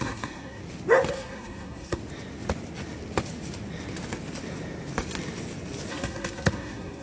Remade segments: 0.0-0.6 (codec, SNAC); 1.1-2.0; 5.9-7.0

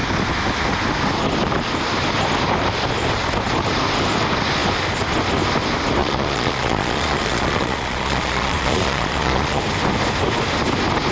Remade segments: 6.0-9.6 (vocoder, Vocos)

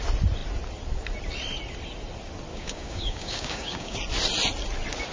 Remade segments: 2.5-4.0 (codec, DAC)

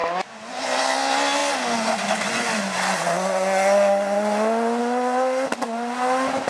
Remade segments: none

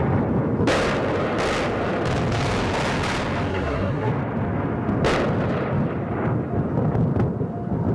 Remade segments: 3.5-4.1 (codec, SNAC)